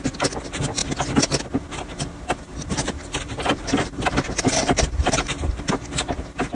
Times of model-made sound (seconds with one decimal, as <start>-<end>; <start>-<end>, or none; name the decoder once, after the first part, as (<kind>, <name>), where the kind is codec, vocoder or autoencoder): 2.5-5.7 (vocoder, BigVGAN v2)

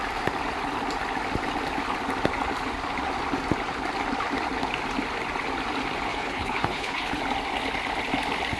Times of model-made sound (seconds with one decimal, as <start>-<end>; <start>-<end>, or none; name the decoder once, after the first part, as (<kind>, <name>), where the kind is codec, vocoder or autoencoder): 6.1-7.2 (codec, HILCodec)

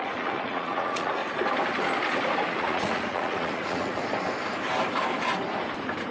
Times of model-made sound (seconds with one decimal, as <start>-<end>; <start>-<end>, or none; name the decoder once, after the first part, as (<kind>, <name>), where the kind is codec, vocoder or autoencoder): 0.0-1.2 (vocoder, Vocos); 2.5-4.0

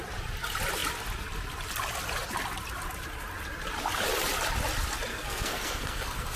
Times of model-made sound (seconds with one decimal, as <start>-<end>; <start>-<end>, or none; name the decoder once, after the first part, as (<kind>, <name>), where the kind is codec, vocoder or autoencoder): 5.1-6.4 (codec, SNAC)